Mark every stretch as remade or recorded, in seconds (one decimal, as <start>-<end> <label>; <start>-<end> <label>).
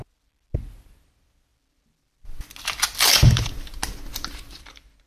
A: 0.0-5.1 recorded